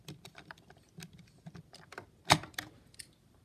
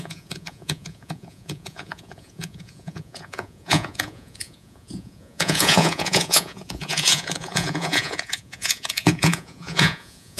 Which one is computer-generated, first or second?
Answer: second